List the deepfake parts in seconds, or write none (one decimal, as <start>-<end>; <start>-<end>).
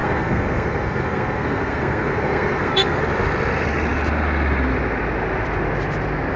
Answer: 0.0-3.0